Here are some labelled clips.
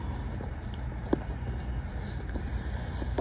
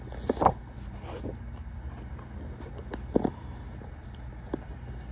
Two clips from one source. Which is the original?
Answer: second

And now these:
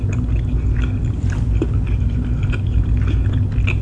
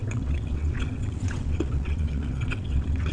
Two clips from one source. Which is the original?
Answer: first